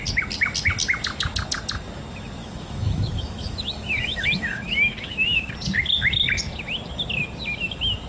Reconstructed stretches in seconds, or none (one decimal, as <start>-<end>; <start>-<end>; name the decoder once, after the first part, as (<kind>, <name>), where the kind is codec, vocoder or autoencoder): 2.4-5.5 (autoencoder, DAC-VAE)